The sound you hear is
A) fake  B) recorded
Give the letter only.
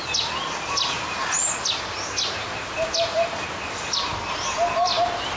B